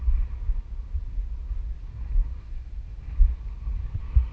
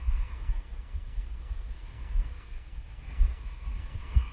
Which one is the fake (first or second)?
second